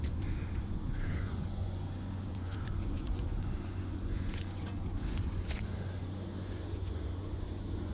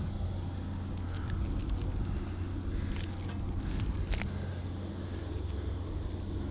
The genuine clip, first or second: second